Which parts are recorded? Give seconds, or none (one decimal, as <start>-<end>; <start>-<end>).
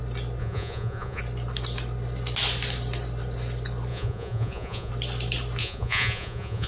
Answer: 0.0-0.4; 1.2-3.9; 4.9-5.6